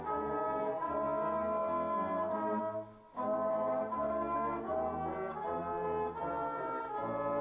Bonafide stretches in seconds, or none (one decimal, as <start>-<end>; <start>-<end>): 0.0-7.4